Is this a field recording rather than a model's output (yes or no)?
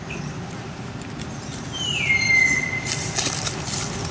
yes